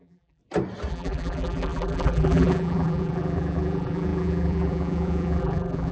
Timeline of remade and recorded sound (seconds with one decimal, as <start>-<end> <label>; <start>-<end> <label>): 0.0-0.4 remade; 0.4-0.9 recorded; 0.9-5.9 remade